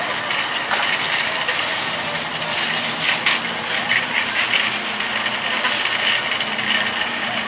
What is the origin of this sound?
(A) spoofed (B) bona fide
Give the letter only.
B